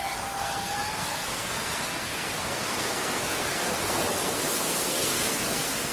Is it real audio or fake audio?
fake